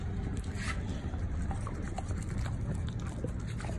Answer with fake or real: real